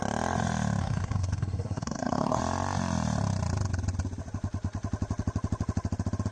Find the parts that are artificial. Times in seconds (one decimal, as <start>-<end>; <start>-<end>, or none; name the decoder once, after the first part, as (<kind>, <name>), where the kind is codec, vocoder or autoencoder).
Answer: 0.8-2.4 (codec, SNAC)